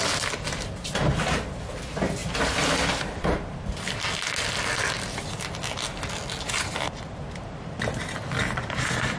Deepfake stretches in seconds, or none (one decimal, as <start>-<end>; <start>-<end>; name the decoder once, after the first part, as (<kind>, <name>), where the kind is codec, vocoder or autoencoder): none

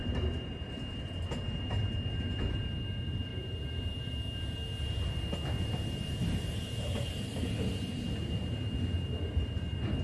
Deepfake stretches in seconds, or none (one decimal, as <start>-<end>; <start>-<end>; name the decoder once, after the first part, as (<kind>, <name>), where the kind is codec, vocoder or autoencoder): none

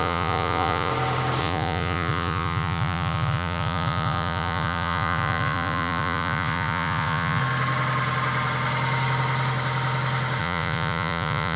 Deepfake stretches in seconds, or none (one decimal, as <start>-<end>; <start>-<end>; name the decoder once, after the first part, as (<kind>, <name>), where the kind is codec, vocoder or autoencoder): 0.0-0.9 (vocoder, Vocos); 1.4-7.4; 10.4-11.6

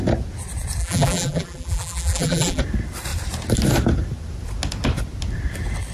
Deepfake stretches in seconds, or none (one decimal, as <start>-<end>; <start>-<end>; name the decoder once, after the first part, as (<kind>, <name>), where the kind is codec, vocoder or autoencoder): 0.8-2.6 (vocoder, BigVGAN v2)